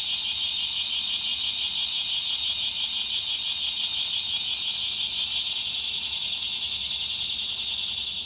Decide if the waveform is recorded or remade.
recorded